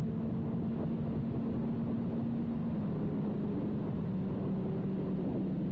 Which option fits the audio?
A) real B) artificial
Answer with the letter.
A